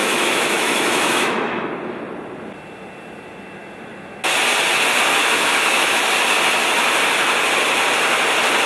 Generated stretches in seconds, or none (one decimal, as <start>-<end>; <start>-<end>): 0.0-1.7; 5.2-6.0